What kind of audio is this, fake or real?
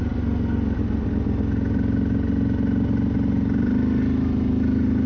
real